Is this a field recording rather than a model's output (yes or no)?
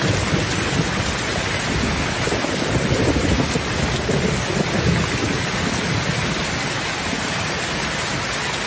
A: yes